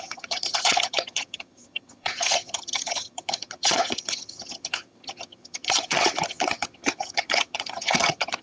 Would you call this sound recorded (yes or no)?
no